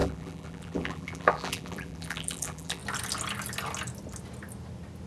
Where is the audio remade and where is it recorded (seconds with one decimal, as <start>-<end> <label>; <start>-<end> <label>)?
0.0-2.8 remade; 2.8-5.1 recorded